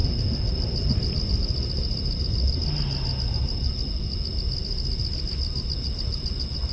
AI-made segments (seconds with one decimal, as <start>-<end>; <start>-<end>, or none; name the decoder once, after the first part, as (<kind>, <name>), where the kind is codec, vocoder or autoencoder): none